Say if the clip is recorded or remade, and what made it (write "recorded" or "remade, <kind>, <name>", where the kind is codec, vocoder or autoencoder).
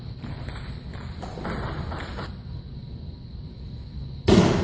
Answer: recorded